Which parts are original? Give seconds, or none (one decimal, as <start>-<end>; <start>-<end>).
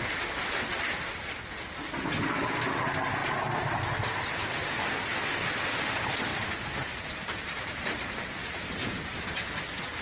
0.0-6.3; 8.3-8.8; 9.6-10.0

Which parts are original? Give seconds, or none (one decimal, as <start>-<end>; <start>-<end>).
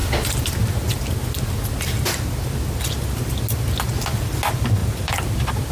0.0-4.8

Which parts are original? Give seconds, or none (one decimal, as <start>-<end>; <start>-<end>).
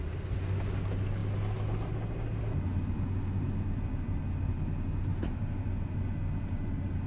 0.0-5.1; 5.7-7.1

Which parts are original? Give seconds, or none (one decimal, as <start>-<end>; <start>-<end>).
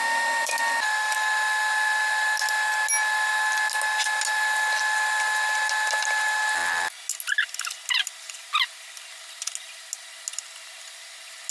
0.5-11.5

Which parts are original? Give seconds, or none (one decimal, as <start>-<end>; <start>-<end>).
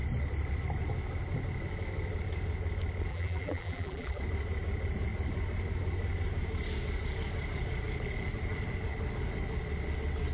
0.0-3.1; 4.2-10.3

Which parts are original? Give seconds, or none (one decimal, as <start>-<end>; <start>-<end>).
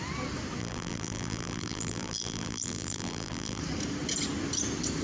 0.0-0.6; 3.6-5.0